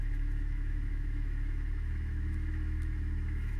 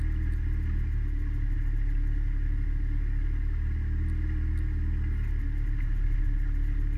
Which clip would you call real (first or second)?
second